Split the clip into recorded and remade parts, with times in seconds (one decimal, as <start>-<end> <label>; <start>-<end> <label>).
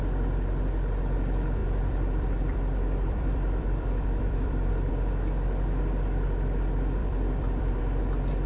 0.0-1.6 recorded; 1.6-4.9 remade; 4.9-7.0 recorded; 7.0-7.8 remade; 7.8-8.5 recorded